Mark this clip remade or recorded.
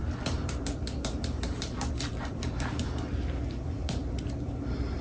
remade